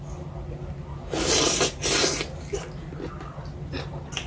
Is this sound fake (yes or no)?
no